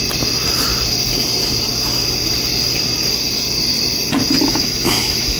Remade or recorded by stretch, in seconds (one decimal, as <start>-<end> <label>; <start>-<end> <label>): 0.0-4.5 recorded; 4.5-5.4 remade